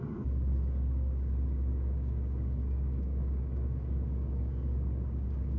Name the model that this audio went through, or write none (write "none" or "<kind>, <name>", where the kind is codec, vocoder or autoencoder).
codec, DAC